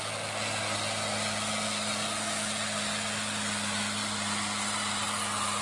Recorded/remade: recorded